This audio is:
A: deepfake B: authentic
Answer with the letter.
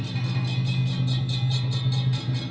B